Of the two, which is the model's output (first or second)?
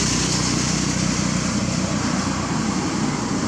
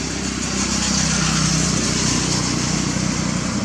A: first